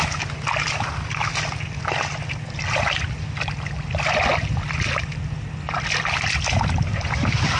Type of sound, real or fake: real